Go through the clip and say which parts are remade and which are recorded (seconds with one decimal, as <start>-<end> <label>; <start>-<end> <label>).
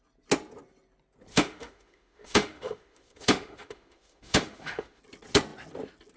0.0-1.3 recorded; 1.3-5.0 remade; 5.0-6.2 recorded